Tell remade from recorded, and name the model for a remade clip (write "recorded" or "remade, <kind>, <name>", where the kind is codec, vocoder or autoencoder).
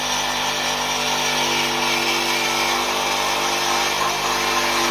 recorded